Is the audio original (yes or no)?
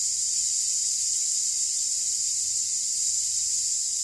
yes